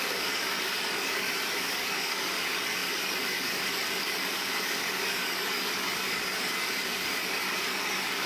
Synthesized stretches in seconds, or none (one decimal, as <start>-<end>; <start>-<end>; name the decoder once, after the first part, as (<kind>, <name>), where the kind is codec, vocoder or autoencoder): 0.0-8.3 (codec, DAC)